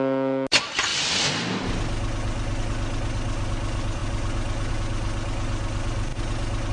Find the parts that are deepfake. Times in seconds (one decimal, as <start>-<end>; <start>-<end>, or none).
none